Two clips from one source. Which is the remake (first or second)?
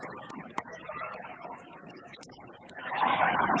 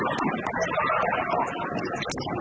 first